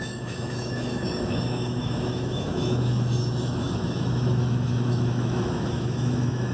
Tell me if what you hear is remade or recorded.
remade